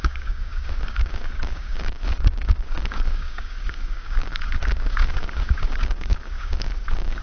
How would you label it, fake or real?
fake